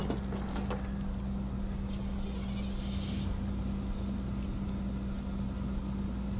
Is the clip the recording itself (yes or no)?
yes